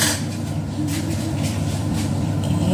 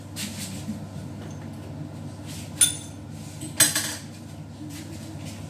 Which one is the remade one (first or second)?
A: first